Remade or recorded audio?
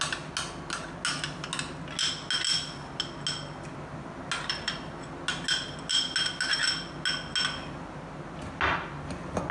recorded